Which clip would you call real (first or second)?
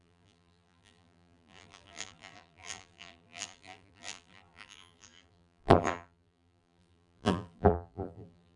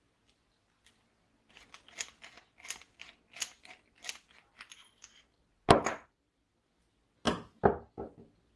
second